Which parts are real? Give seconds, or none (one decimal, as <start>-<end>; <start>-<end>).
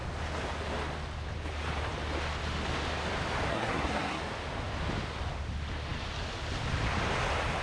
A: 0.0-3.5; 4.2-7.6